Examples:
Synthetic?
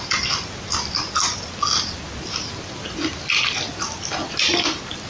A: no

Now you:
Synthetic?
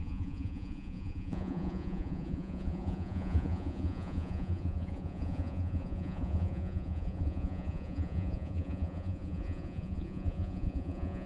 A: yes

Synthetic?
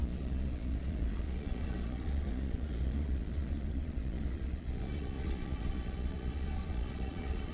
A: yes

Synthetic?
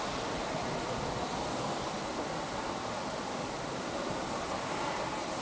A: no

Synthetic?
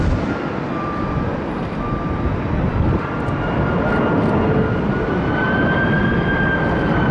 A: no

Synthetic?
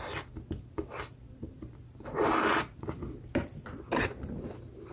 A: no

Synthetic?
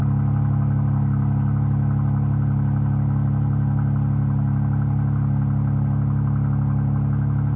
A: no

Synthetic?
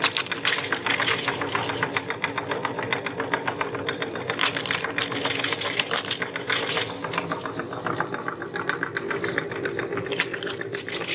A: no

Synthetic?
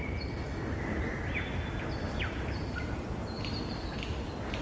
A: no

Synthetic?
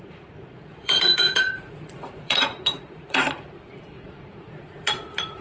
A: yes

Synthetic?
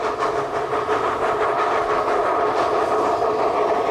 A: no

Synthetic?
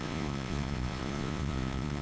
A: yes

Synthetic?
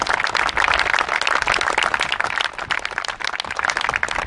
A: no